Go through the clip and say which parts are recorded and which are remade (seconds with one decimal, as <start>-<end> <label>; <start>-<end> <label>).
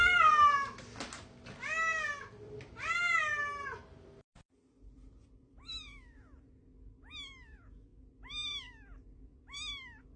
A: 0.0-10.2 recorded